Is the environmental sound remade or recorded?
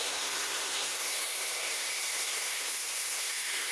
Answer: remade